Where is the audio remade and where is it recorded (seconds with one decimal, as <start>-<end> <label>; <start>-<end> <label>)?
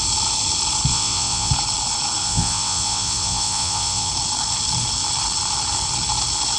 0.0-0.9 recorded; 0.9-1.5 remade; 1.5-2.2 recorded; 2.2-4.1 remade; 4.1-6.6 recorded